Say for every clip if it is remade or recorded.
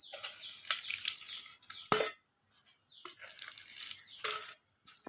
recorded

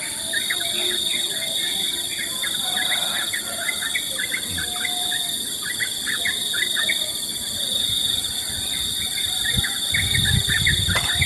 recorded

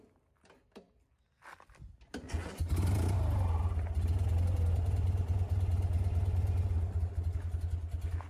recorded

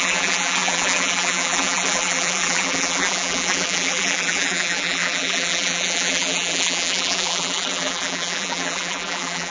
remade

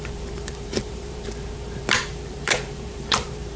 remade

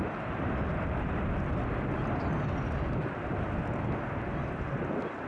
recorded